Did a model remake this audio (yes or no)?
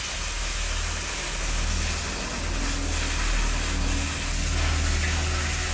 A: no